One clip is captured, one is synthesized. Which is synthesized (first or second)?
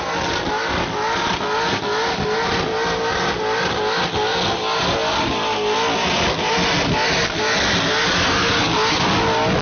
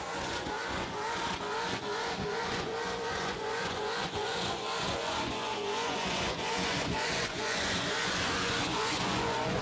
second